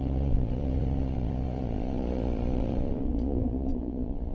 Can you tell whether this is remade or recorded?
remade